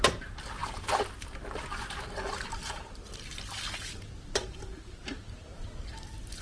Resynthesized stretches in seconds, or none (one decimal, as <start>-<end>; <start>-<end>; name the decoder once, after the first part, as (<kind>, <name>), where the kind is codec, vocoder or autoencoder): none